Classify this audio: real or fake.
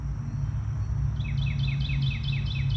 real